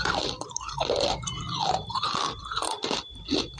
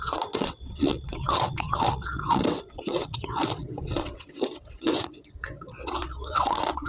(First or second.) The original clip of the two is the first